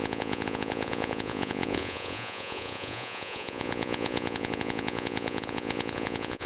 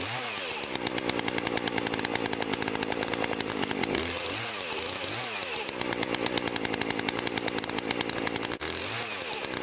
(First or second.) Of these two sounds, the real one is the second